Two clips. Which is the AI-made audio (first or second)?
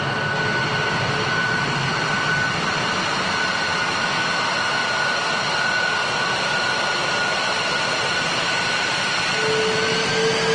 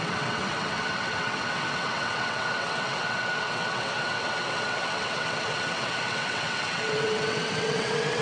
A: second